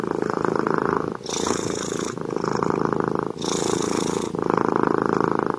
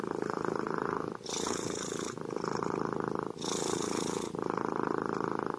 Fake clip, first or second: second